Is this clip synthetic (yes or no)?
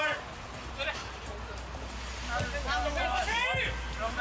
no